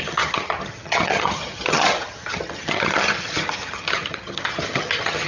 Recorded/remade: remade